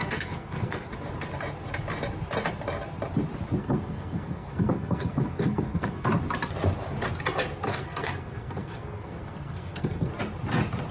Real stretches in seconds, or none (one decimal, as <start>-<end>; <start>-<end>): 0.9-3.6; 6.1-7.7; 10.1-10.9